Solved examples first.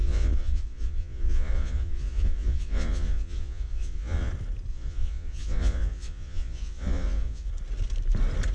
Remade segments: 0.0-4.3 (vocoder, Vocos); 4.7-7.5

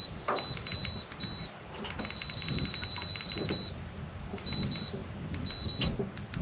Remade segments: none

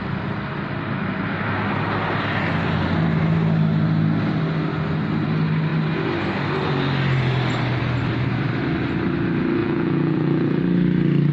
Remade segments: 9.6-10.6 (vocoder, Vocos)

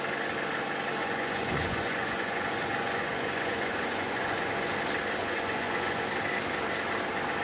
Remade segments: 1.0-4.7 (vocoder, Vocos); 5.2-6.1

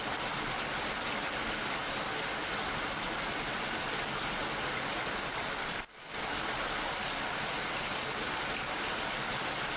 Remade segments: none

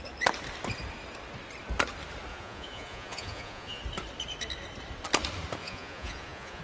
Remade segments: 2.3-3.8 (vocoder, Vocos); 5.6-6.6

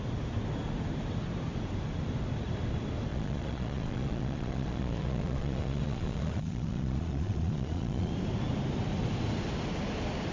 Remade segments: 3.1-8.1 (vocoder, Vocos)